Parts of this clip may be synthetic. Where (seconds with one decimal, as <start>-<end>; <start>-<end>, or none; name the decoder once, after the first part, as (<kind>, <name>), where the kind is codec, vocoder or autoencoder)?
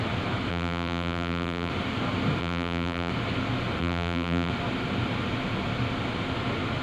0.5-1.7 (vocoder, BigVGAN v2); 2.4-3.1; 3.8-4.5